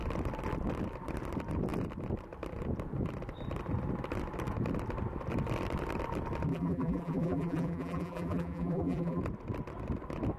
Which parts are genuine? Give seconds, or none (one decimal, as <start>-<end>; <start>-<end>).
0.0-6.5; 9.2-10.4